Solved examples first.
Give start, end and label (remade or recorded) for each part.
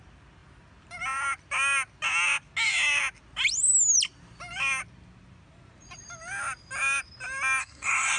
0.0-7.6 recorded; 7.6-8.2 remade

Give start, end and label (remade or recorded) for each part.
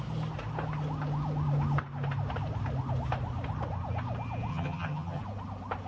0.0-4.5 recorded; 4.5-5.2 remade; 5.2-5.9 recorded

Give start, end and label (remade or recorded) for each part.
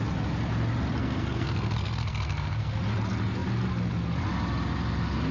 0.0-1.0 recorded; 1.0-2.8 remade; 2.8-5.3 recorded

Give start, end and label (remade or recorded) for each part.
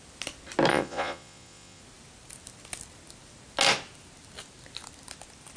0.0-0.7 recorded; 0.7-1.8 remade; 1.8-5.6 recorded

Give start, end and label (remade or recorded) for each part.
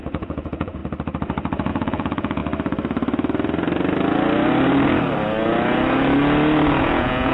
0.0-0.8 remade; 0.8-1.7 recorded; 1.7-2.4 remade; 2.4-6.8 recorded; 6.8-7.3 remade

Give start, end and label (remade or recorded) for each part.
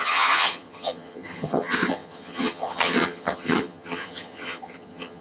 0.0-5.2 remade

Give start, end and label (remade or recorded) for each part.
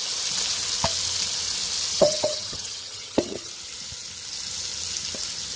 0.0-1.9 recorded; 1.9-3.5 remade; 3.5-5.6 recorded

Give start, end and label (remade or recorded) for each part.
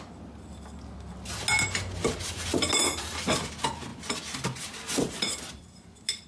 0.0-6.3 recorded